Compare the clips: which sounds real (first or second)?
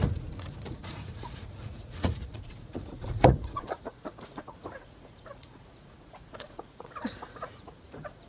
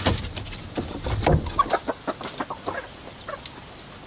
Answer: second